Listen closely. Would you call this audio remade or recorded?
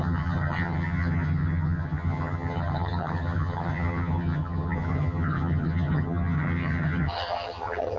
remade